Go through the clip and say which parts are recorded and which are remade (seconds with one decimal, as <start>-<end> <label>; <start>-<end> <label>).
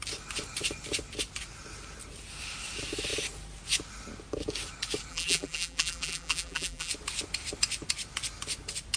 0.0-5.1 recorded; 5.1-6.9 remade; 6.9-9.0 recorded